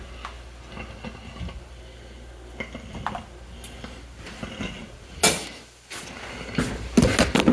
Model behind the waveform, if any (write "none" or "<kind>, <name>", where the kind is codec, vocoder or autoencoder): none